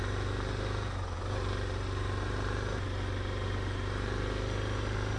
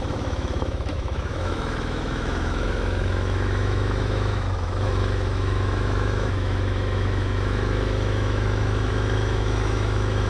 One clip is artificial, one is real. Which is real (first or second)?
first